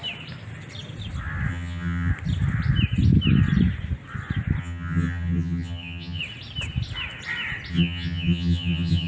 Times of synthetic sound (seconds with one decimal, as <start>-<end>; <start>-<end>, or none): 1.5-2.1; 4.6-6.2; 7.7-9.1